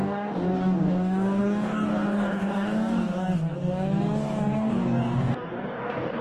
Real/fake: fake